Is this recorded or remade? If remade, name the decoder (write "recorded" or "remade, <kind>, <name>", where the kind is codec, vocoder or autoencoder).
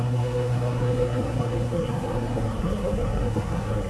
remade, codec, SNAC